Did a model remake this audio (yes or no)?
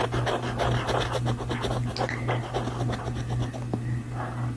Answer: no